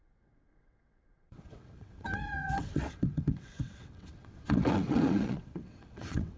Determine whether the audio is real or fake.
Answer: fake